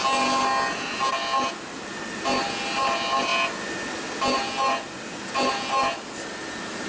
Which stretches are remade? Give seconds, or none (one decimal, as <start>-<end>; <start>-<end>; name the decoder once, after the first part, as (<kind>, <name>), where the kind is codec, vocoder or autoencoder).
none